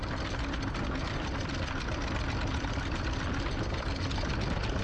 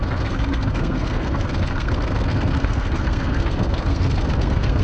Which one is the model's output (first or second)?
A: second